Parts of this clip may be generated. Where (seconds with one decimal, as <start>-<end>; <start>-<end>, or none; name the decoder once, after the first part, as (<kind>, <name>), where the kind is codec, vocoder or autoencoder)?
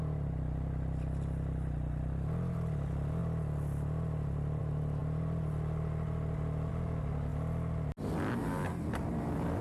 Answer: none